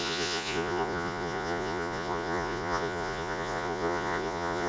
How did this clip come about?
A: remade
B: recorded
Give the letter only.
A